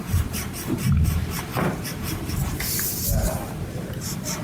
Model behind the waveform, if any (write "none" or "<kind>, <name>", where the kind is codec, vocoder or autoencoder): vocoder, BigVGAN v2